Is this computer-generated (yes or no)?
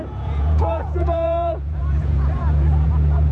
yes